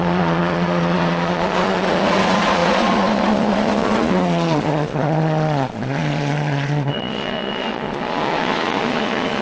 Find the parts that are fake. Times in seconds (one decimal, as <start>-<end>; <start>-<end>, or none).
0.0-9.4